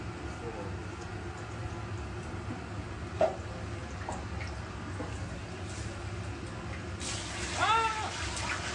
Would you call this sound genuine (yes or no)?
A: yes